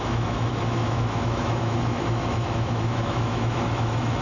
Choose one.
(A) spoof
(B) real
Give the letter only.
A